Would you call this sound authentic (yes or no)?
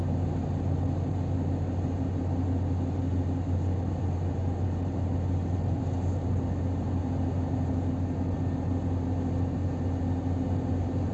yes